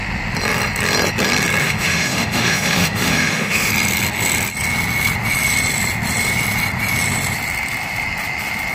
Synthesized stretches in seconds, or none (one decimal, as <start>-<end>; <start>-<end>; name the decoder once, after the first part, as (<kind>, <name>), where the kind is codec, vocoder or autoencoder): 1.6-3.7 (autoencoder, DAC-VAE)